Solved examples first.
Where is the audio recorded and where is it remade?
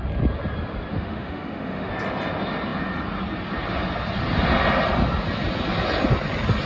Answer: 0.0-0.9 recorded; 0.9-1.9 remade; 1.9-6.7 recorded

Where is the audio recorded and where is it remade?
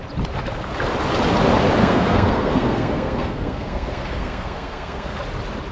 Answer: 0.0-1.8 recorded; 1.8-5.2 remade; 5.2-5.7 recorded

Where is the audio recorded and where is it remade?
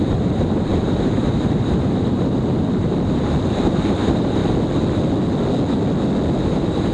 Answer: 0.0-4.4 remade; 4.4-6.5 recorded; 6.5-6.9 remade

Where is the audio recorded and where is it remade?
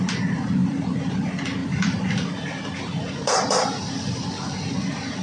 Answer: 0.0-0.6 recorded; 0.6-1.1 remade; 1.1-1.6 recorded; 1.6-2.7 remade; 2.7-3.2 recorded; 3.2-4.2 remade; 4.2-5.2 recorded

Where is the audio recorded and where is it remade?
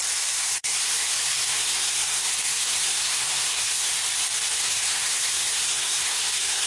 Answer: 0.0-0.4 recorded; 0.4-3.9 remade; 3.9-4.5 recorded; 4.5-6.7 remade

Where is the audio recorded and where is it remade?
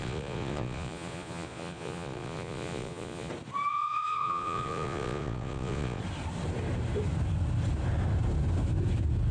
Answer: 0.0-3.3 remade; 3.3-3.7 recorded; 3.7-6.0 remade; 6.0-9.3 recorded